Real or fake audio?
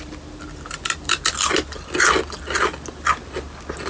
real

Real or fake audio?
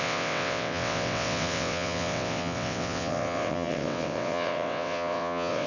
fake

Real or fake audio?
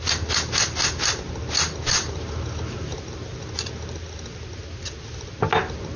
real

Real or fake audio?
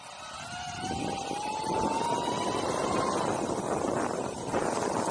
real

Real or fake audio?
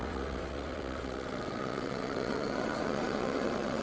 fake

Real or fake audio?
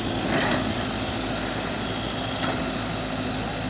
real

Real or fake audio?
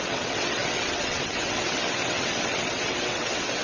fake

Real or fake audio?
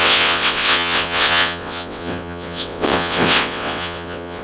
fake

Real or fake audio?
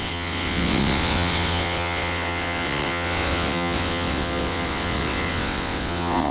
fake